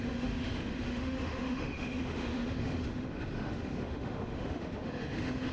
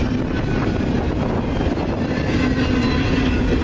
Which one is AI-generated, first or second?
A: first